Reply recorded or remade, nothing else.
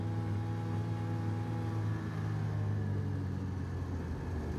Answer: recorded